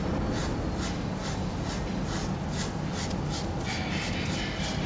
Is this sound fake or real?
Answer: real